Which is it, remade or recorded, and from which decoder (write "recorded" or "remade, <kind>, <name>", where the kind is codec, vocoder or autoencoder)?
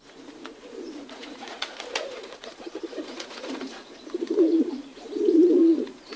remade, vocoder, Vocos